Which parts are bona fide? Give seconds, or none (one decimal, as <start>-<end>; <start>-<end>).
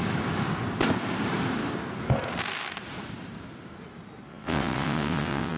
0.0-4.3